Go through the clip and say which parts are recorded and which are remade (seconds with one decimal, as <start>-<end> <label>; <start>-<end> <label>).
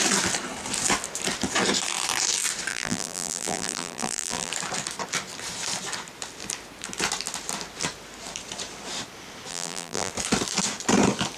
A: 0.0-2.7 recorded; 2.7-4.5 remade; 4.5-9.5 recorded; 9.5-10.1 remade; 10.1-11.4 recorded